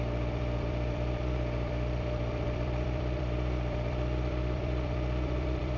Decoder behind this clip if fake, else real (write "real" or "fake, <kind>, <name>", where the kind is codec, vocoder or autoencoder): fake, vocoder, BigVGAN v2